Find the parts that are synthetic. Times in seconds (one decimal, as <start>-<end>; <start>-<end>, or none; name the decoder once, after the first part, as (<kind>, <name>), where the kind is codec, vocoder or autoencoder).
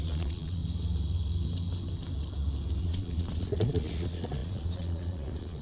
0.0-0.6 (vocoder, Vocos); 2.8-5.6